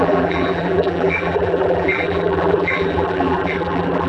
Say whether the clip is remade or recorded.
remade